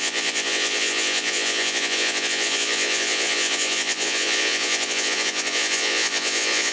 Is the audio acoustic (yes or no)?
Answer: no